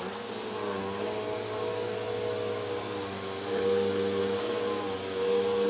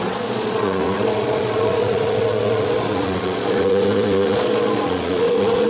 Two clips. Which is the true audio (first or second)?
first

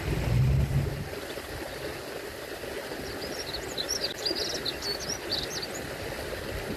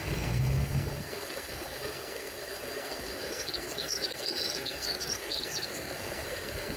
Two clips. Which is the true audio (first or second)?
first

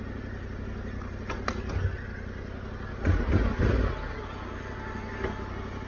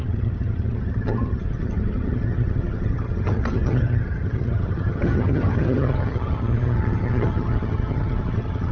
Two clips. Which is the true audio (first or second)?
first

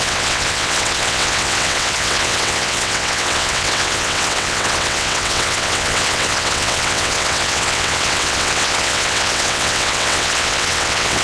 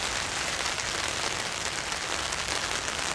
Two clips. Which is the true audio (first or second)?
second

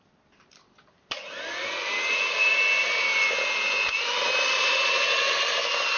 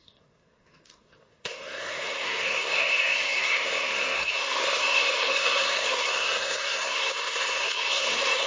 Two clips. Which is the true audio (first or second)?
first